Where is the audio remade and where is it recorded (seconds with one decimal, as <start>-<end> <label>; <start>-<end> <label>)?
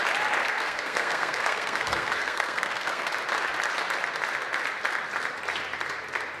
0.0-0.4 recorded; 0.4-3.1 remade; 3.1-6.4 recorded